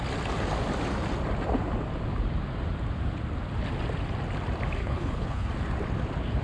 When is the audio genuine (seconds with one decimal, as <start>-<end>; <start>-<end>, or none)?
0.0-4.8; 5.5-6.4